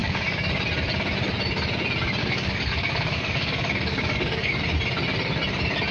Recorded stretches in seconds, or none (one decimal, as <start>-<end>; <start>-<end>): 0.6-2.2; 4.6-5.9